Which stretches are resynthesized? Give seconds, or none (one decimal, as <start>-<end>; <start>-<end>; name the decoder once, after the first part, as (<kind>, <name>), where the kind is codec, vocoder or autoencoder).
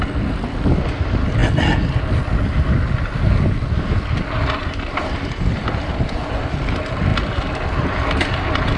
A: 4.6-6.4 (vocoder, BigVGAN v2)